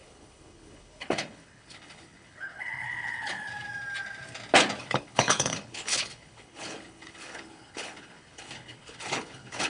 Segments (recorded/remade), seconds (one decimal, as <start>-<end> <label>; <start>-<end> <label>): 0.0-3.5 remade; 3.5-4.8 recorded; 4.8-9.7 remade